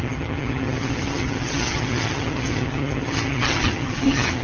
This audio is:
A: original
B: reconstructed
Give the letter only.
B